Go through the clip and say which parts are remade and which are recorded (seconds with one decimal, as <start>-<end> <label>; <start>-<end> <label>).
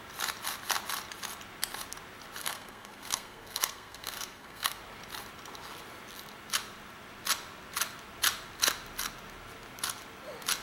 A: 0.0-2.4 recorded; 2.4-4.8 remade; 4.8-10.6 recorded